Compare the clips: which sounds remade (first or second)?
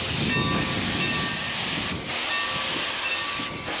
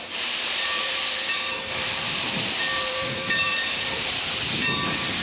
second